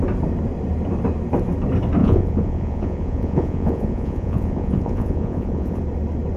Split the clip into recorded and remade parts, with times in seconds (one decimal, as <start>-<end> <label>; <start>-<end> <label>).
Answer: 0.0-2.0 recorded; 2.0-5.8 remade; 5.8-6.4 recorded